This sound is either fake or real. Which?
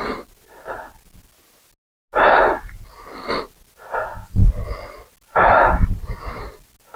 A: real